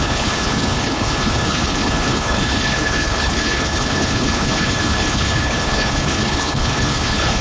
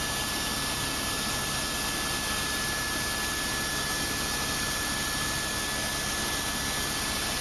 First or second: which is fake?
first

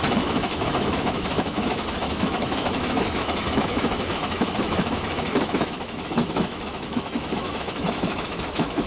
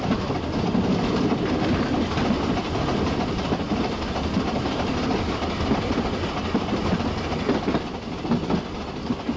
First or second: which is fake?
first